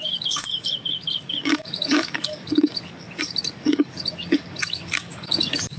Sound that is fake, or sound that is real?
fake